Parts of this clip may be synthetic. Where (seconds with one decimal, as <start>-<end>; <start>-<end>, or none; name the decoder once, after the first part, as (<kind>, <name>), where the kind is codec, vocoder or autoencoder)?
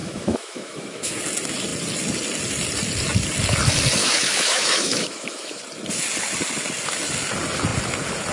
0.0-1.1 (autoencoder, DAC-VAE); 4.0-5.6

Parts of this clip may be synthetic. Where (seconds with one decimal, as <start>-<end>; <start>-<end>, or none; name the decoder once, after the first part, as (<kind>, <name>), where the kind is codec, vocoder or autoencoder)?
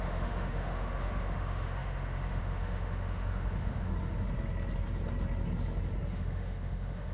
0.0-3.9 (autoencoder, DAC-VAE); 6.1-7.1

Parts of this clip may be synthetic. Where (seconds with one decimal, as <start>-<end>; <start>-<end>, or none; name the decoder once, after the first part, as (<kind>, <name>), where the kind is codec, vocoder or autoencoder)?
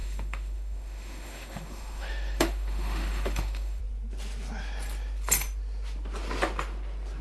0.0-3.8 (autoencoder, DAC-VAE)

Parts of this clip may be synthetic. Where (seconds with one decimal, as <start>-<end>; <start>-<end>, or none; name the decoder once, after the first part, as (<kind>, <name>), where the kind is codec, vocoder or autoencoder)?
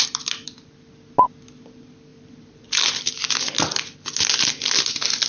none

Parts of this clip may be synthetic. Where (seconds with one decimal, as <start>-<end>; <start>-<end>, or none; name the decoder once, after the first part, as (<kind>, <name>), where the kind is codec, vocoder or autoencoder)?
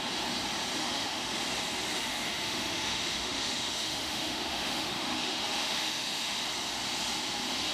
0.8-1.4 (autoencoder, DAC-VAE); 1.9-6.4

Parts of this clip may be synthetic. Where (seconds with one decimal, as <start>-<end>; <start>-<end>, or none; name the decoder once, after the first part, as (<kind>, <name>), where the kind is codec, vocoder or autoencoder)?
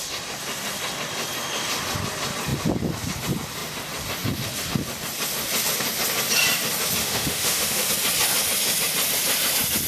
7.0-7.9 (autoencoder, DAC-VAE)